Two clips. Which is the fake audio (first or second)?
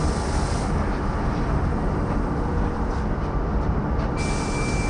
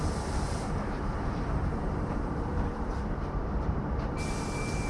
second